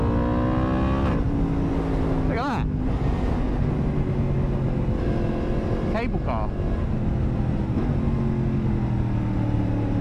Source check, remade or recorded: recorded